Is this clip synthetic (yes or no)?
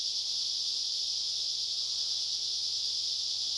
no